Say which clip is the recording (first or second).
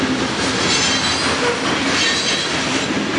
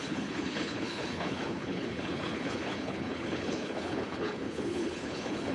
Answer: first